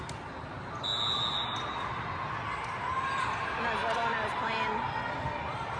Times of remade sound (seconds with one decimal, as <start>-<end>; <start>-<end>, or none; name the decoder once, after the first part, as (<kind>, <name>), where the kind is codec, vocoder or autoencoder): none